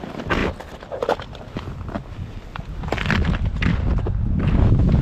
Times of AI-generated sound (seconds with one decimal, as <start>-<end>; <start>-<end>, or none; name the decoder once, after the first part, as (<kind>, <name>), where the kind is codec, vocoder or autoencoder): none